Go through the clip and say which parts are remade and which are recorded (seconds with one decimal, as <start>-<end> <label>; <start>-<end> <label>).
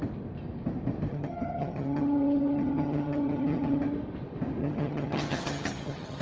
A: 0.0-1.1 recorded; 1.1-3.8 remade; 3.8-4.6 recorded; 4.6-6.2 remade